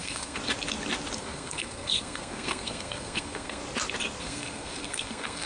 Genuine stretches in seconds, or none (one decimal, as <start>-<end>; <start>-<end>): 0.4-1.2; 3.6-4.2